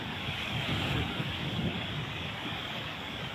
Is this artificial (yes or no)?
yes